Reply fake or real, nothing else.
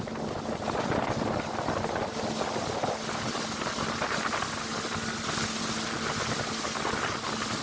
real